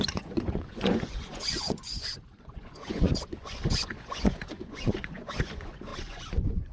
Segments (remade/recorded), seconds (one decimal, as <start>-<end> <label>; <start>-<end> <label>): 0.0-6.7 remade